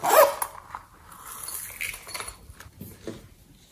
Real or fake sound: real